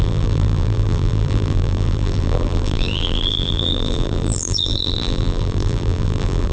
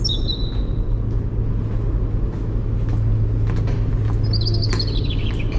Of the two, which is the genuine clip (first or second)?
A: second